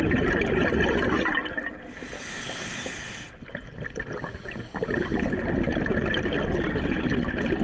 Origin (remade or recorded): recorded